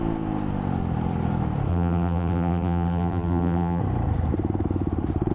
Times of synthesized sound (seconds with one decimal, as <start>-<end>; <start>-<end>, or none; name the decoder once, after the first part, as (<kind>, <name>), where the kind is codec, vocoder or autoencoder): 1.7-3.8 (vocoder, BigVGAN v2)